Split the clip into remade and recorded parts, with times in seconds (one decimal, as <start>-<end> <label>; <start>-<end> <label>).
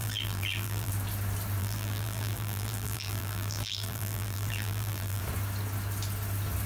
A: 0.0-0.9 remade; 0.9-1.6 recorded; 1.6-5.2 remade; 5.2-6.7 recorded